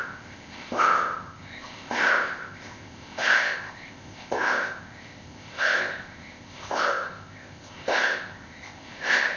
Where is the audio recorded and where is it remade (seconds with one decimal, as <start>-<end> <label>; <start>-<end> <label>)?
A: 0.0-9.4 remade